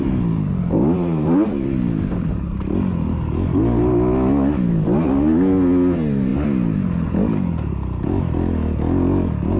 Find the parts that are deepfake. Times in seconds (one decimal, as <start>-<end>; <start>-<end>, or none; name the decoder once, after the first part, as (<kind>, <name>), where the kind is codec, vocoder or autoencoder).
none